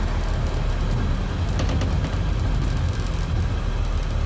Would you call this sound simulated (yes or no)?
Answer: no